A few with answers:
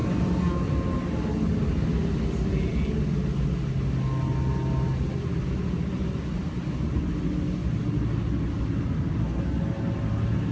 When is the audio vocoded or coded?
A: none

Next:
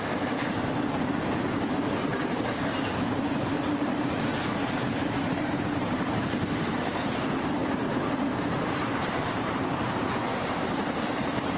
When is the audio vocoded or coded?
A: 0.0-11.6

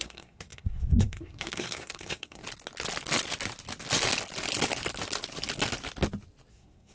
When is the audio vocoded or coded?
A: 0.0-2.4; 6.5-6.9

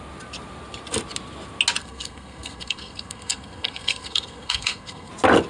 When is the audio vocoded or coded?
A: 1.8-5.1

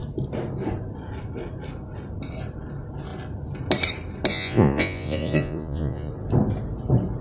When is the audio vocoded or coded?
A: 4.3-6.1

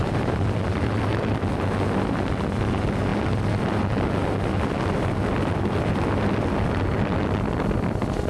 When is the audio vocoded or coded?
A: 0.0-0.6

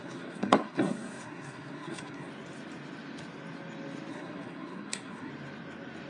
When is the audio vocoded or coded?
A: 0.0-2.3; 4.1-5.3